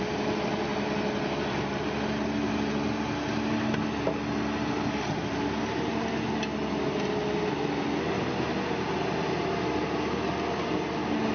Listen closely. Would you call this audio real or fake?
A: real